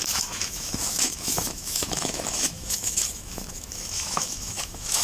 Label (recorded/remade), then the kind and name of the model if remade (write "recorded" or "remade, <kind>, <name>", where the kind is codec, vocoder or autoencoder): remade, autoencoder, DAC-VAE